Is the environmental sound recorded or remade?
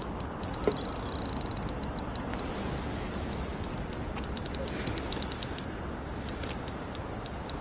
recorded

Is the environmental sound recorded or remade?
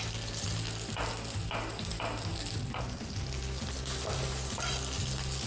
recorded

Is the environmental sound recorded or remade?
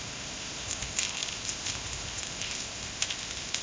remade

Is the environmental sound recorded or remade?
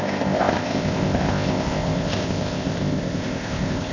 remade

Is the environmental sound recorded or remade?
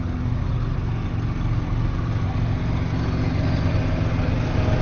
recorded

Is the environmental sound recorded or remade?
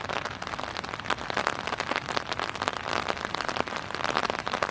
recorded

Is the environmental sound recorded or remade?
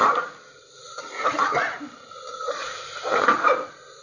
recorded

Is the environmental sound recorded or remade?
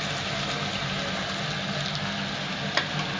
recorded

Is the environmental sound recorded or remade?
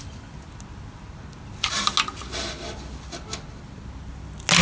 recorded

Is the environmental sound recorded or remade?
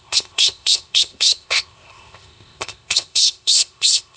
remade